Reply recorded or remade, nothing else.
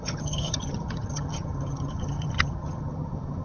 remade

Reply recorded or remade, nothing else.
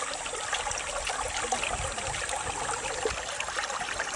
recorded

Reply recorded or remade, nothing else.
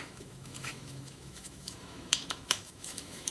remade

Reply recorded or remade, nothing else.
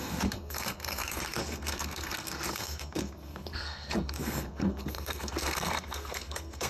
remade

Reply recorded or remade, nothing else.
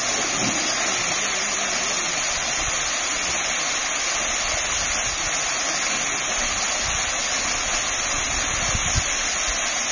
recorded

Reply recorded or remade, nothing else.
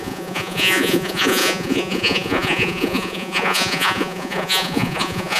remade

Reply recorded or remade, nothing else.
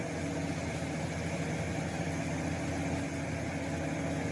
recorded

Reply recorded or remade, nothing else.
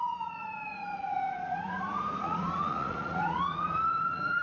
remade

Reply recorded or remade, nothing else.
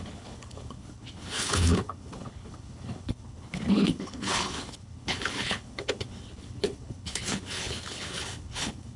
remade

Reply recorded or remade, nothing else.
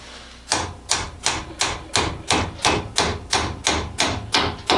recorded